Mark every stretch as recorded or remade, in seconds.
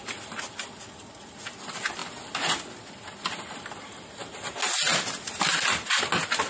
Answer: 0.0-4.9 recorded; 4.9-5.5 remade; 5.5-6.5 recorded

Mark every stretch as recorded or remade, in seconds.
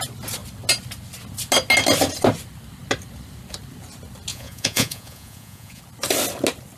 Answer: 0.0-4.3 recorded; 4.3-5.8 remade; 5.8-6.8 recorded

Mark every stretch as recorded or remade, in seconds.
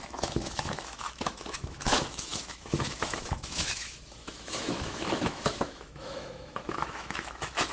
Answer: 0.0-7.7 remade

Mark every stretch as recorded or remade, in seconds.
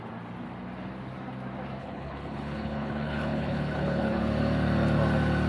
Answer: 0.0-1.8 recorded; 1.8-4.2 remade; 4.2-5.5 recorded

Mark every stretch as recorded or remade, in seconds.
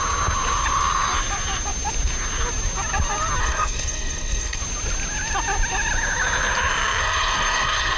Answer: 0.0-3.4 recorded; 3.4-4.6 remade; 4.6-7.0 recorded; 7.0-8.0 remade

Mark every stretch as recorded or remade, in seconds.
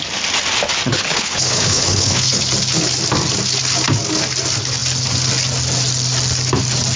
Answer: 0.0-0.9 recorded; 0.9-2.4 remade; 2.4-7.0 recorded